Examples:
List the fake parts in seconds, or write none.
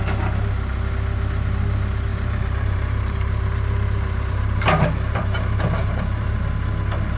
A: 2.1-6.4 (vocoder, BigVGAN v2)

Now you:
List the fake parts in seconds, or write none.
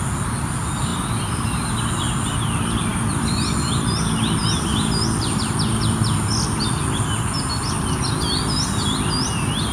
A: 0.9-1.9 (vocoder, BigVGAN v2); 2.9-3.9; 4.4-6.3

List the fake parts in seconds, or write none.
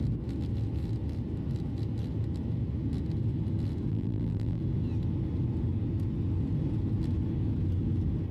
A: 3.9-4.6 (vocoder, BigVGAN v2)